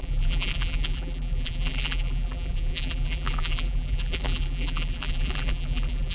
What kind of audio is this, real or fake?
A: fake